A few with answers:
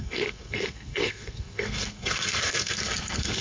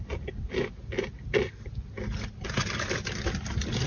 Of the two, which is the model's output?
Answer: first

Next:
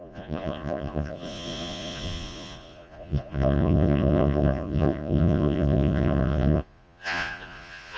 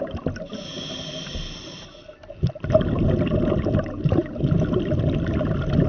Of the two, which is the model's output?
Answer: first